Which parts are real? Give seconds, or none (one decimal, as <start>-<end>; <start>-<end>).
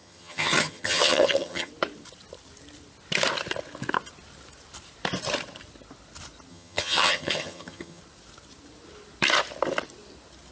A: 1.7-6.5; 8.0-10.5